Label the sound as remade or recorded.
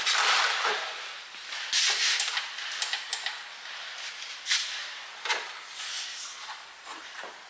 recorded